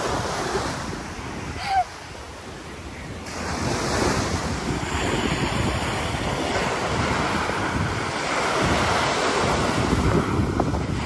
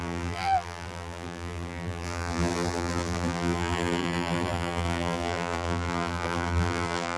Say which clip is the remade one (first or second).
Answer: second